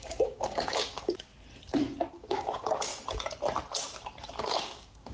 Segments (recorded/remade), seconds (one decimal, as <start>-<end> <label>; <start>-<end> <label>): 0.0-1.3 remade; 1.3-2.1 recorded; 2.1-2.9 remade; 2.9-4.4 recorded; 4.4-5.1 remade